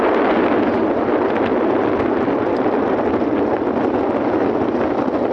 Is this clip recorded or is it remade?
recorded